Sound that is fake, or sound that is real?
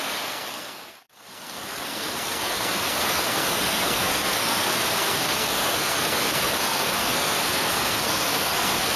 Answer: fake